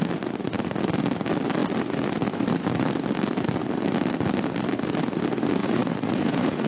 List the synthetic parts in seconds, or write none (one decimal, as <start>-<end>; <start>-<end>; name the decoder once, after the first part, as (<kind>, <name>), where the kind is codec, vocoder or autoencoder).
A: 5.6-6.7 (vocoder, Vocos)